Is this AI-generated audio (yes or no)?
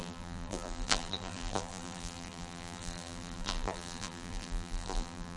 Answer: yes